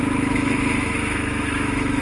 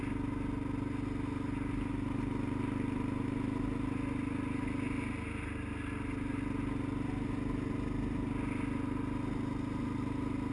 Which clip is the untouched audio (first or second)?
second